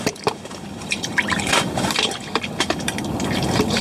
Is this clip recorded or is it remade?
remade